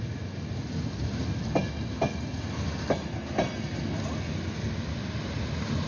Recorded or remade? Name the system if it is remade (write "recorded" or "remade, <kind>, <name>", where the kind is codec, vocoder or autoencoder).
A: recorded